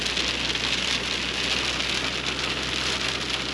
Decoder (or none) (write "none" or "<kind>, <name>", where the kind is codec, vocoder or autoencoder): none